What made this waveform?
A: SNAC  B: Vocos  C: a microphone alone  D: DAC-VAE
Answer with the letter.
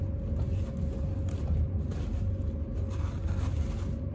C